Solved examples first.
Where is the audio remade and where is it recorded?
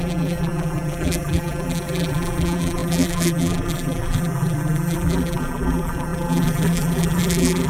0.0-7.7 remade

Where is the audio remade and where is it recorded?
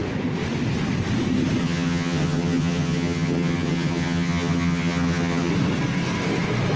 0.0-1.6 recorded; 1.6-5.5 remade; 5.5-6.8 recorded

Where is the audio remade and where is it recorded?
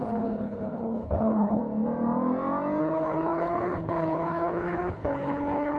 0.0-1.6 remade; 1.6-2.8 recorded; 2.8-5.8 remade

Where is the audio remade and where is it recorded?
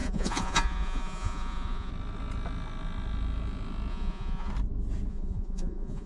0.0-1.9 remade; 1.9-3.9 recorded; 3.9-4.5 remade; 4.5-5.1 recorded; 5.1-6.1 remade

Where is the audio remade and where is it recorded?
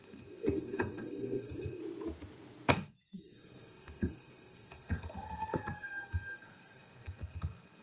0.0-1.8 remade; 1.8-2.7 recorded; 2.7-7.8 remade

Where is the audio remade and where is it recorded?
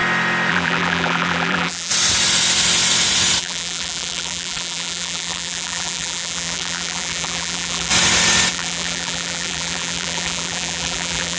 0.0-0.5 recorded; 0.5-1.9 remade; 1.9-3.4 recorded; 3.4-7.9 remade; 7.9-8.5 recorded; 8.5-11.4 remade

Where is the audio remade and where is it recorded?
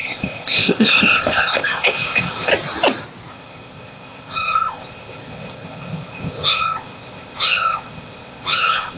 0.0-2.5 remade; 2.5-3.3 recorded; 3.3-9.0 remade